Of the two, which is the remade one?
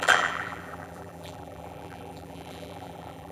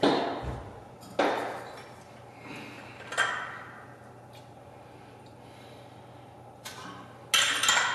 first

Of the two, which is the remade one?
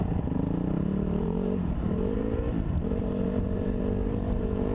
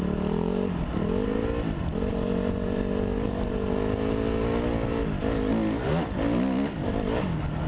first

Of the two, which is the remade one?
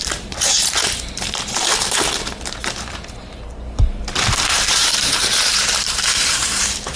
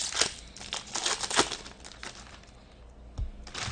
first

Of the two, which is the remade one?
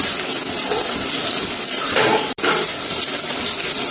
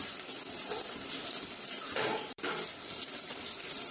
second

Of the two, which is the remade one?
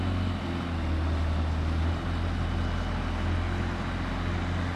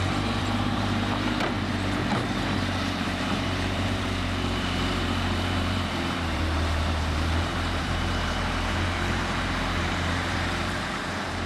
second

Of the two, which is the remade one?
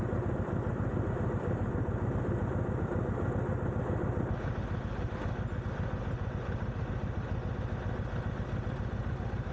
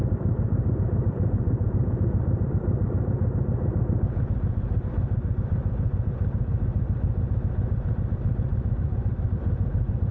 second